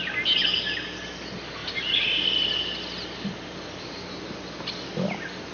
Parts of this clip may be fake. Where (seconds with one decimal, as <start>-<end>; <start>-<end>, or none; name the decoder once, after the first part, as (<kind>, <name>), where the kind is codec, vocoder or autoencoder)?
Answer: 1.6-4.7 (vocoder, BigVGAN v2)